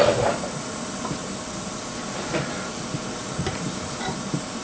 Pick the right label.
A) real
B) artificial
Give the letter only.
B